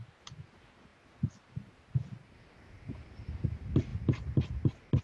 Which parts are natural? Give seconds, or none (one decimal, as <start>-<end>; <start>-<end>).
0.0-0.9; 2.7-5.0